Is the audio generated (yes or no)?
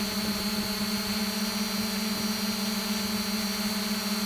no